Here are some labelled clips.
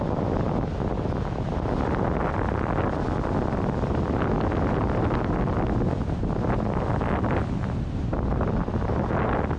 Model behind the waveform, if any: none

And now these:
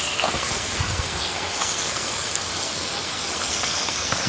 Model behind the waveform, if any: codec, SNAC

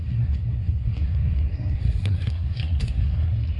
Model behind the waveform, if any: codec, SNAC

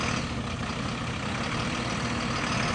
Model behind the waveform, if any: none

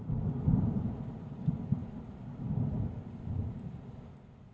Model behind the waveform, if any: none